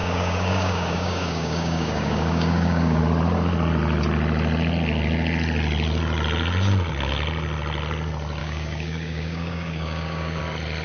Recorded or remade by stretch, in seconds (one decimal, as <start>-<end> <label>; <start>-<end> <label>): 0.0-3.0 remade; 3.0-8.4 recorded; 8.4-10.4 remade; 10.4-10.8 recorded